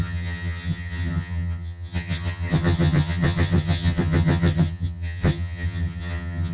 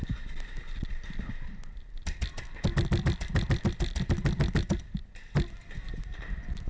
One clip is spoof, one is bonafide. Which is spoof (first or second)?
first